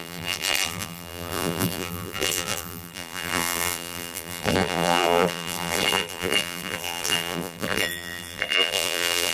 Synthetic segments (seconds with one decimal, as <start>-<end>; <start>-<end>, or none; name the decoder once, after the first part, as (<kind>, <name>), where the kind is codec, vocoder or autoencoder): 0.0-9.3 (vocoder, BigVGAN v2)